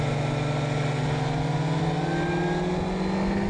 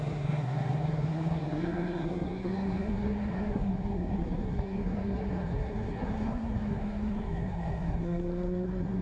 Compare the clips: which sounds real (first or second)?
first